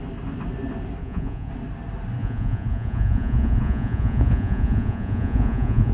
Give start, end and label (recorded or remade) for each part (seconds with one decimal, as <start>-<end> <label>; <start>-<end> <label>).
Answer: 0.0-1.0 recorded; 1.0-1.5 remade; 1.5-2.2 recorded; 2.2-5.9 remade